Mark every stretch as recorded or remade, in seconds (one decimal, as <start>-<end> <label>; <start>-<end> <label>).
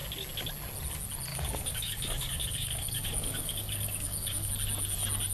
0.0-1.3 recorded; 1.3-4.5 remade; 4.5-5.3 recorded